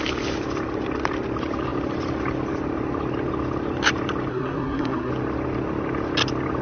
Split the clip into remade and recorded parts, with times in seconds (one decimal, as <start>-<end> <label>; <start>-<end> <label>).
0.0-4.3 recorded; 4.3-5.1 remade; 5.1-6.6 recorded